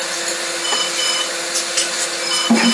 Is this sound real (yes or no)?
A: yes